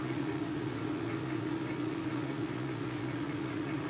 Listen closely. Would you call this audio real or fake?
fake